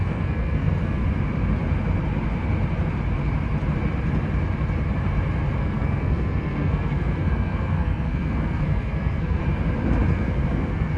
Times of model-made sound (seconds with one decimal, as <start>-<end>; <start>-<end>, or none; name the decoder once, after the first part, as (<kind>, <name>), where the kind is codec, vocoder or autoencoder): 0.0-1.0 (codec, SNAC); 5.6-9.4; 10.1-11.0